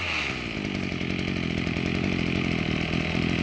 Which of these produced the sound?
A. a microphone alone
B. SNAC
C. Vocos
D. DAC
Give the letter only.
A